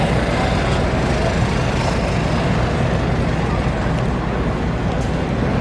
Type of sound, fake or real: real